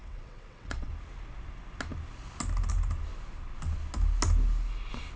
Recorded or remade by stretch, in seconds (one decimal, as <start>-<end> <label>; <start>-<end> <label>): 0.0-0.9 remade; 0.9-5.2 recorded